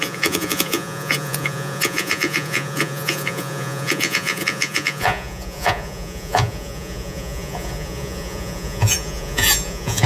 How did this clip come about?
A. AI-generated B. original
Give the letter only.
A